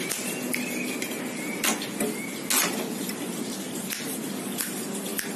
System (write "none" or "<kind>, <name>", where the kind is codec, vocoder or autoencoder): none